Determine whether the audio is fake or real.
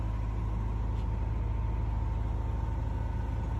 real